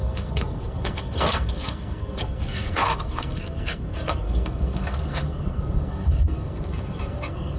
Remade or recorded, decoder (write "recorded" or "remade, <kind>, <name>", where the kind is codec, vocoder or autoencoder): remade, codec, SNAC